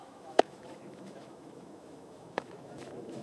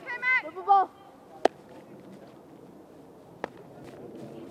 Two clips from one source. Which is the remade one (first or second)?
first